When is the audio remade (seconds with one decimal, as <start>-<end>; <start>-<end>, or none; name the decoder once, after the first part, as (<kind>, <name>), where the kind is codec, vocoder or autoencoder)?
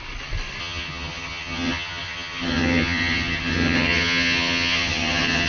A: 0.6-5.5 (vocoder, HiFi-GAN)